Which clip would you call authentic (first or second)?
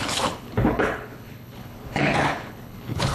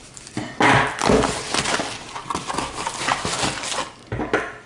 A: second